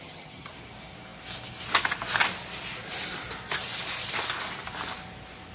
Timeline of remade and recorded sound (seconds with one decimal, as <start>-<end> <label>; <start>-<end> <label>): 0.0-0.5 remade; 0.5-5.5 recorded